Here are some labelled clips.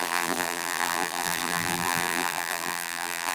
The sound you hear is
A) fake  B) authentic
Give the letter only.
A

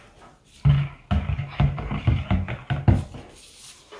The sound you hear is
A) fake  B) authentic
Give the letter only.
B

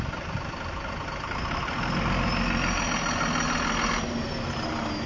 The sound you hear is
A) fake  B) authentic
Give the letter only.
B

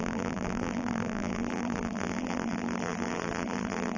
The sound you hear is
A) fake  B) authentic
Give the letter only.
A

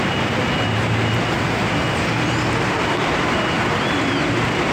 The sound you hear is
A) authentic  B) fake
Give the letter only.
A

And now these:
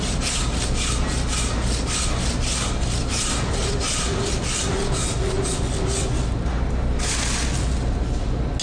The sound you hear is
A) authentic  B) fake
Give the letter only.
A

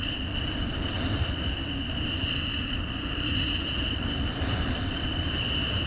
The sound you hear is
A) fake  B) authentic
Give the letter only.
B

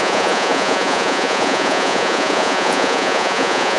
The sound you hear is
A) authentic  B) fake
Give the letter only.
B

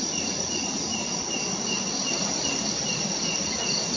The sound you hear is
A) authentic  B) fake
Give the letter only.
A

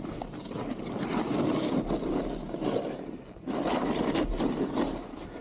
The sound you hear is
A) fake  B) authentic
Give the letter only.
B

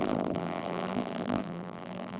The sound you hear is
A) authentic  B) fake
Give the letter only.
B